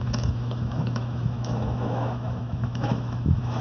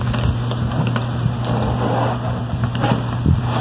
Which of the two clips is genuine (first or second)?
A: second